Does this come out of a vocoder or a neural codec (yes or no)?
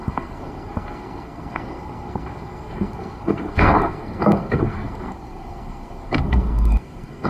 yes